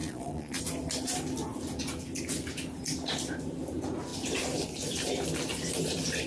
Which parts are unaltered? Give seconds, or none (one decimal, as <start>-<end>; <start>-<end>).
0.6-6.3